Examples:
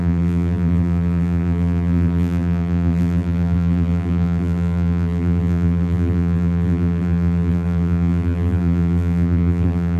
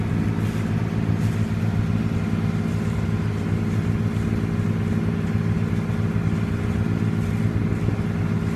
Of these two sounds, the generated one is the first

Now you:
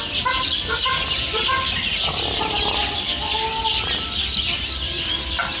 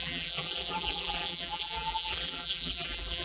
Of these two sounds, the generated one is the second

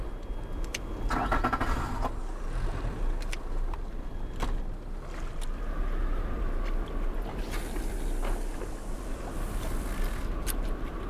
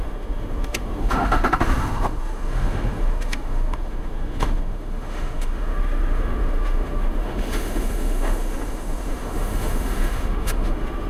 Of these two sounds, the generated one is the second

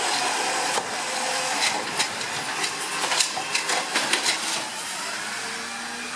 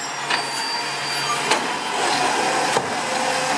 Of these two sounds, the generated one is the first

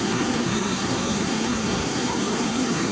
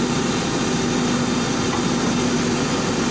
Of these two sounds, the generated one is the first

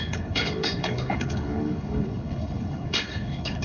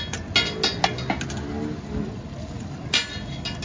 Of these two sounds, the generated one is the first